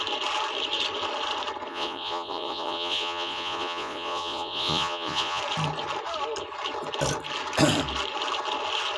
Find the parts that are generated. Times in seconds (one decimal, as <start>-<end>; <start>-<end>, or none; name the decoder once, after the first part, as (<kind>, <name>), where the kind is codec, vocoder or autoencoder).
1.7-5.4 (vocoder, Vocos)